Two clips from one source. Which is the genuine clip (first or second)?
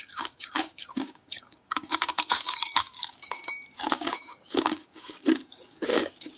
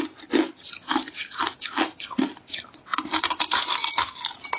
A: second